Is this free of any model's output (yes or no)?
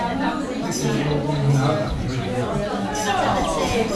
yes